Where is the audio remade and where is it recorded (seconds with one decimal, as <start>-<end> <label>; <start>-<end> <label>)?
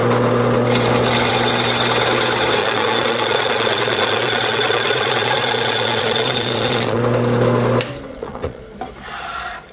0.0-2.6 recorded; 2.6-7.0 remade; 7.0-8.1 recorded; 8.1-8.6 remade; 8.6-9.7 recorded